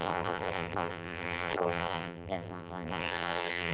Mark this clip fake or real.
fake